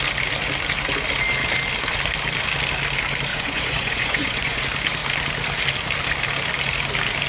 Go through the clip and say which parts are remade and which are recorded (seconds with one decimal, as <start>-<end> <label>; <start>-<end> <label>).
0.0-3.3 recorded; 3.3-4.6 remade; 4.6-7.3 recorded